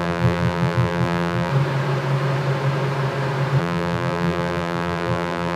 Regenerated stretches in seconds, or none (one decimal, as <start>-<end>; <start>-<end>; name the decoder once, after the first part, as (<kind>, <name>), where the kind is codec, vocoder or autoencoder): 0.0-1.5 (vocoder, BigVGAN v2); 3.6-5.6